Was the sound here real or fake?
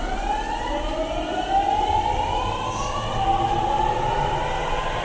real